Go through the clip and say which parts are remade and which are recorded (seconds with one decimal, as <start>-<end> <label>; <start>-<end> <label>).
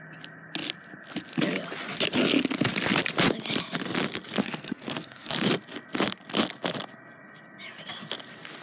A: 0.0-4.4 recorded; 4.4-5.3 remade; 5.3-8.6 recorded